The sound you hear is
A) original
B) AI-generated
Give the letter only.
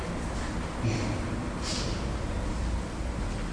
A